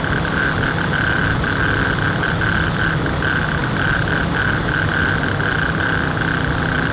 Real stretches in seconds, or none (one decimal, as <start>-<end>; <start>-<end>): none